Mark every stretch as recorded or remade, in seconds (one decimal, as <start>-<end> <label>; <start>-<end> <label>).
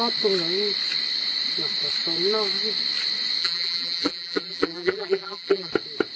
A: 0.0-3.4 recorded; 3.4-5.7 remade; 5.7-6.2 recorded